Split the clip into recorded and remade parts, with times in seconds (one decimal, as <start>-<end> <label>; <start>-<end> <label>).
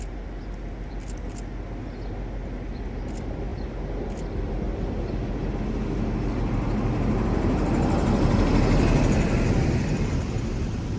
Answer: 0.0-11.0 recorded